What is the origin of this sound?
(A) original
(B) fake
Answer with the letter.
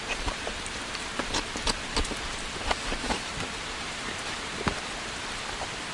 B